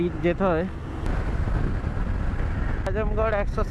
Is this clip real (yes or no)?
yes